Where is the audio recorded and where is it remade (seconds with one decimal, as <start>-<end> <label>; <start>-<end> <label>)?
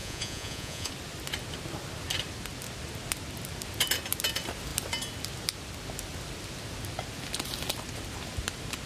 0.0-0.9 remade; 0.9-8.9 recorded